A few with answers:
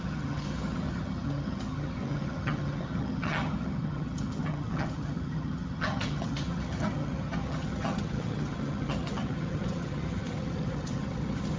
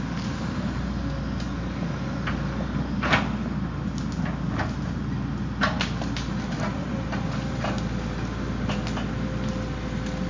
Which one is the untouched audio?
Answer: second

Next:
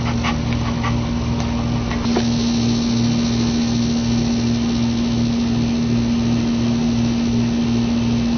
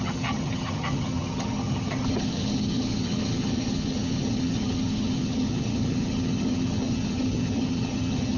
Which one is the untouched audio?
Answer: first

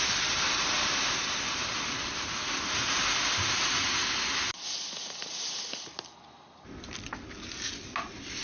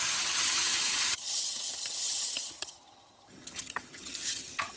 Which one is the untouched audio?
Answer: first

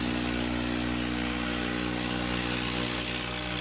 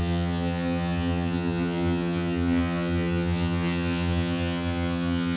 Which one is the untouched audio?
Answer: first